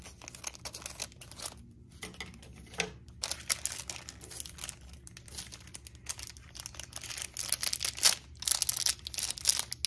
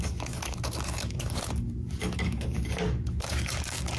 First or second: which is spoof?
second